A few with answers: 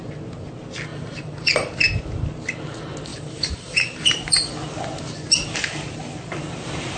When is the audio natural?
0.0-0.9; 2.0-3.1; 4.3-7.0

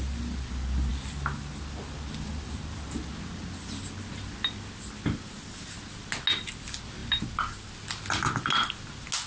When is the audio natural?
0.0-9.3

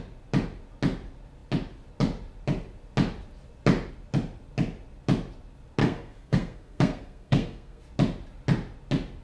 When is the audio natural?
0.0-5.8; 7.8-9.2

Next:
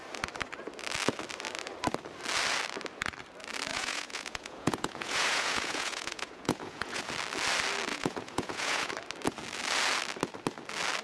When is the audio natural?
0.0-3.7; 7.0-7.9; 8.9-11.0